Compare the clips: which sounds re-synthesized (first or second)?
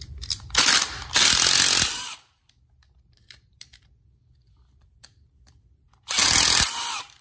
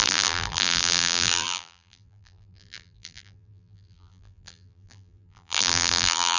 second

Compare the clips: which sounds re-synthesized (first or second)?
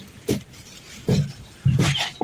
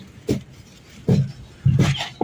first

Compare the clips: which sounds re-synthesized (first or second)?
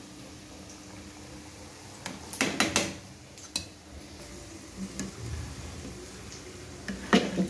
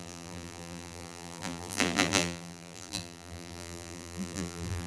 second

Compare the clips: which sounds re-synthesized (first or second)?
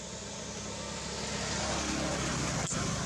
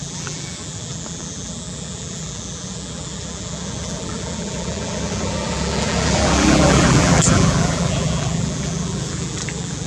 second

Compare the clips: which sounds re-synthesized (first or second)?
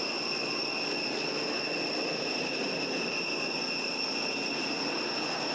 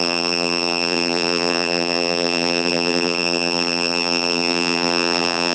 second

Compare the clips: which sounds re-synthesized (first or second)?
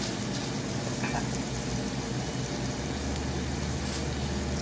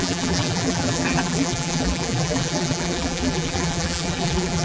second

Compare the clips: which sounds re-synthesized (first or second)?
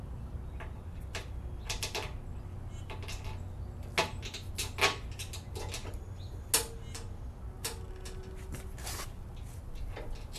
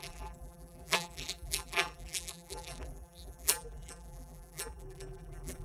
second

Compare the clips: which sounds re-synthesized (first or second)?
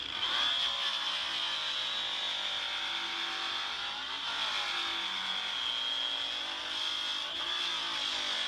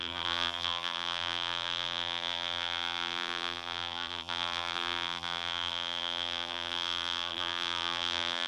second